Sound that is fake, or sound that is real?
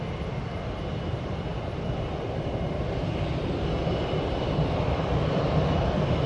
fake